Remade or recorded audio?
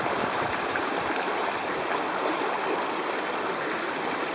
recorded